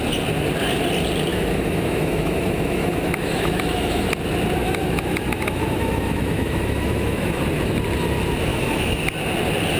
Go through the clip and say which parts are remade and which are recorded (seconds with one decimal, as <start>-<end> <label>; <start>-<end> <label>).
0.0-1.3 recorded; 1.3-4.1 remade; 4.1-4.6 recorded; 4.6-7.4 remade; 7.4-8.5 recorded; 8.5-9.0 remade; 9.0-9.8 recorded

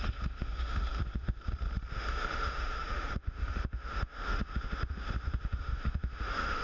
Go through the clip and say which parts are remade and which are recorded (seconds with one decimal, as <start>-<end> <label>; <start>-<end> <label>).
0.0-1.4 remade; 1.4-1.9 recorded; 1.9-6.6 remade

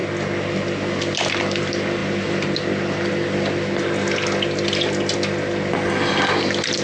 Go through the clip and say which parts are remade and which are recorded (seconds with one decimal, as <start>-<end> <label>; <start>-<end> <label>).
0.0-6.8 recorded

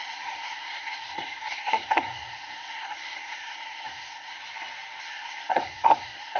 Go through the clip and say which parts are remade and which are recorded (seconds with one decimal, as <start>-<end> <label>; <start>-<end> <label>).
0.0-4.4 remade; 4.4-5.0 recorded; 5.0-6.4 remade